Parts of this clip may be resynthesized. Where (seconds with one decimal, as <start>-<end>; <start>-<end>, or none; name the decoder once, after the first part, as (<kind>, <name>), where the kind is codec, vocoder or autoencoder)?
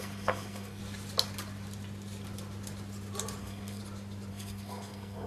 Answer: 0.0-0.8 (codec, SNAC); 3.4-3.8; 4.3-5.3